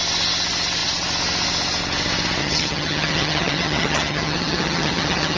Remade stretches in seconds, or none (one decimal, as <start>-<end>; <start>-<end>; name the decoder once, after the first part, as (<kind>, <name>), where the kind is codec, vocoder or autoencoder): 2.4-5.4 (vocoder, HiFi-GAN)